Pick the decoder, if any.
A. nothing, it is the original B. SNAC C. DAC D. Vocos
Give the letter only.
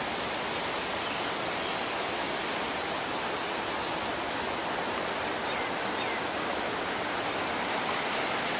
A